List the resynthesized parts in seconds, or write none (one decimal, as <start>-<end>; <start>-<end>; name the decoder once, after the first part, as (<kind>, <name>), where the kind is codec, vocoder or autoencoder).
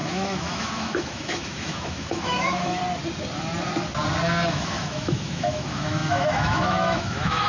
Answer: 0.0-2.8 (autoencoder, DAC-VAE); 4.5-7.5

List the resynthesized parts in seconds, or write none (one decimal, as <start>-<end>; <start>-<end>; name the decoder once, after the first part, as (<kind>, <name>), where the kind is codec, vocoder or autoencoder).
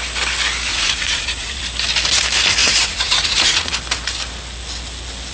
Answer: 0.7-1.6 (vocoder, Vocos); 2.6-3.7